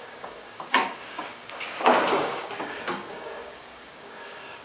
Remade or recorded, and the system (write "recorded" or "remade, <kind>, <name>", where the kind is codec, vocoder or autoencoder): remade, codec, DAC